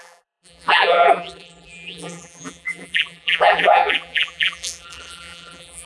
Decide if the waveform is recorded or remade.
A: remade